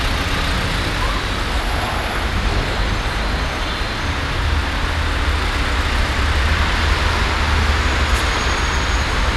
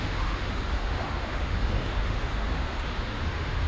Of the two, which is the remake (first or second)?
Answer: second